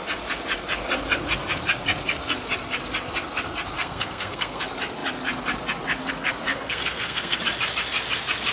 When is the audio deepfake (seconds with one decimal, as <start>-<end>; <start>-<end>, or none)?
3.8-4.6; 6.5-7.4